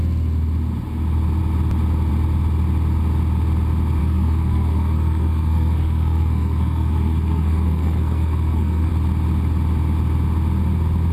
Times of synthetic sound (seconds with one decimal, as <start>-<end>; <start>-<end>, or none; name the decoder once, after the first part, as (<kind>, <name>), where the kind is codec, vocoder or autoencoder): 4.0-8.9 (codec, SNAC)